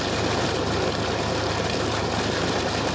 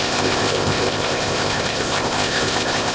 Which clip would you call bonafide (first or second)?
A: first